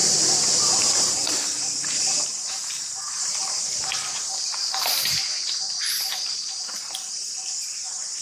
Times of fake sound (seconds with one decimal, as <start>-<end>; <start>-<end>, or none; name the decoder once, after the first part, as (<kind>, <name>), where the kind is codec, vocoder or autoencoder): 0.6-8.2 (vocoder, BigVGAN v2)